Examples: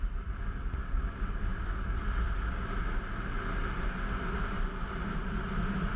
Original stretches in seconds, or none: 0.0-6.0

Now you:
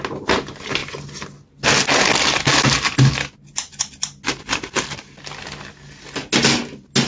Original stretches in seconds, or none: 0.0-7.1

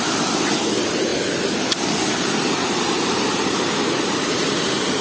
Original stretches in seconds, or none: 0.0-5.0

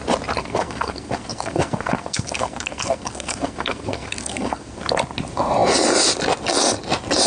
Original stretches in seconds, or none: 0.0-0.4; 4.8-7.3

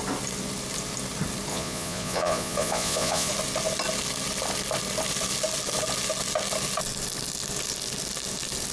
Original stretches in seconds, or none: 0.0-1.5; 3.3-8.7

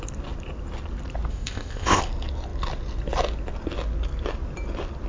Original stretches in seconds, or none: 0.0-1.3; 2.0-5.1

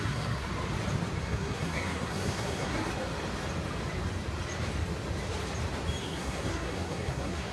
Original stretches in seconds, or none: 0.5-1.2; 2.9-6.0